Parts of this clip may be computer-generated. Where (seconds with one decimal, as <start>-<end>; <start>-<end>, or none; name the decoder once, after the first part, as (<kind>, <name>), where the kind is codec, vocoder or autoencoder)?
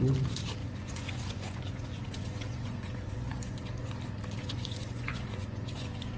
0.6-3.9 (vocoder, Vocos); 4.4-6.2